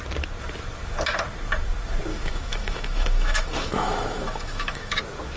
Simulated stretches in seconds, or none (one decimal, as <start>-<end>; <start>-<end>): 2.1-5.0